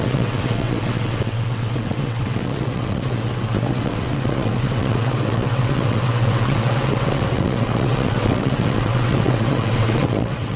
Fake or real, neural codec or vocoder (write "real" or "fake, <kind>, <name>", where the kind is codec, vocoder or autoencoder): fake, vocoder, WaveNeXt